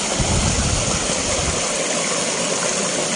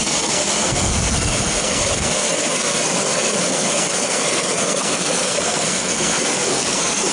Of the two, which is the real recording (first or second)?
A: first